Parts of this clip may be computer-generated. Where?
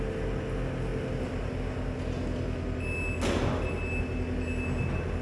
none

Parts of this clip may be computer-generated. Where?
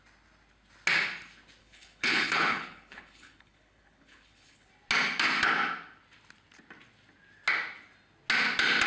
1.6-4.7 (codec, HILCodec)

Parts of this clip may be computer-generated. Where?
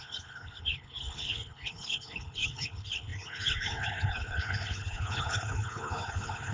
0.0-6.5 (codec, HILCodec)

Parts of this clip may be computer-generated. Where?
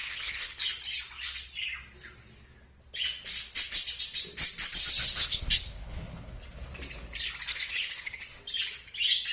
0.0-0.6 (codec, HILCodec); 5.1-6.4; 7.5-8.4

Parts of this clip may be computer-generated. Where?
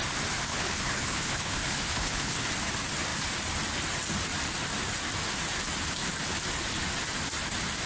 0.5-2.5 (codec, HILCodec)